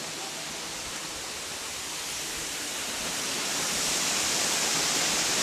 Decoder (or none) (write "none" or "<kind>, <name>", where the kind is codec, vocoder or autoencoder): none